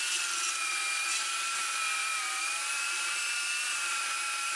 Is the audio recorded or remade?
remade